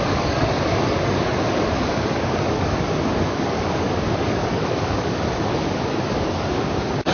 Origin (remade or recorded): remade